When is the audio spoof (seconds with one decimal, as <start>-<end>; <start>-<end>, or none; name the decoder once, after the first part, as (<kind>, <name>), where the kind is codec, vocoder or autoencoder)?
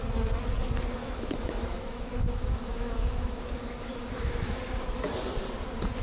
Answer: 1.0-4.6 (autoencoder, DAC-VAE)